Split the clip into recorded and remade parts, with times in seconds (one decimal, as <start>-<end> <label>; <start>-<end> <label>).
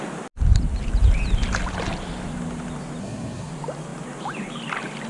0.0-3.0 recorded; 3.0-3.5 remade; 3.5-5.1 recorded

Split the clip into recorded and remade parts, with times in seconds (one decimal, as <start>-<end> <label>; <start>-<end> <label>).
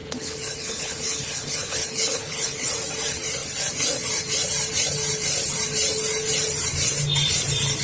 0.0-2.7 remade; 2.7-7.8 recorded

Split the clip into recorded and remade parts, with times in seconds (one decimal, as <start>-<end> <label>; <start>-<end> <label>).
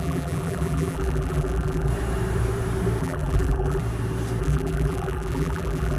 0.0-1.9 remade; 1.9-3.0 recorded; 3.0-3.8 remade; 3.8-4.4 recorded; 4.4-6.0 remade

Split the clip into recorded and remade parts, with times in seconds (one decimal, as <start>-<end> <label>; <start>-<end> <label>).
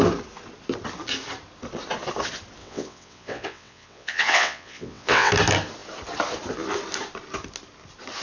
0.0-2.6 recorded; 2.6-5.3 remade; 5.3-8.2 recorded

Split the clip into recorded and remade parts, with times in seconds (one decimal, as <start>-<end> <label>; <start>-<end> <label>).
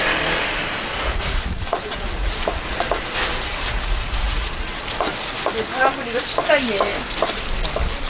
0.0-0.9 recorded; 0.9-5.5 remade; 5.5-8.1 recorded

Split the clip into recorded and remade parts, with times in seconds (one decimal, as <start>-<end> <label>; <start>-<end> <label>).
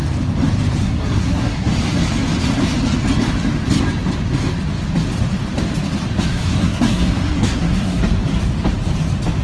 0.0-0.8 recorded; 0.8-1.7 remade; 1.7-6.3 recorded; 6.3-8.0 remade; 8.0-9.4 recorded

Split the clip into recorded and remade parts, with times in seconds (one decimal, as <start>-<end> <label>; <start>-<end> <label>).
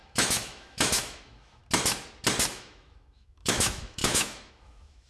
0.0-1.6 remade; 1.6-2.5 recorded; 2.5-5.1 remade